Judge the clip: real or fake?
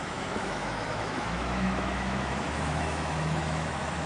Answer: fake